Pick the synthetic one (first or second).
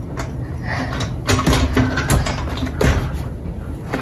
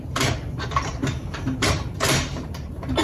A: second